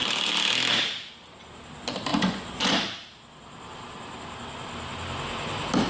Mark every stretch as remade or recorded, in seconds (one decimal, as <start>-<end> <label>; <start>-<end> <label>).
0.0-2.1 recorded; 2.1-2.7 remade; 2.7-5.9 recorded